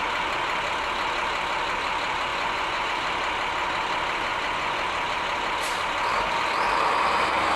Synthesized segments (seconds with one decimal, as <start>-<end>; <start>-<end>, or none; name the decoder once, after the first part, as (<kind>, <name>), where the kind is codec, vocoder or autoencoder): 2.3-2.9 (vocoder, Vocos); 4.3-4.8